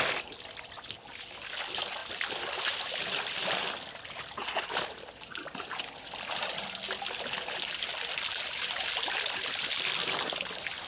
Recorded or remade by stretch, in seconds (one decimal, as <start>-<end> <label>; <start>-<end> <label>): 0.0-10.9 recorded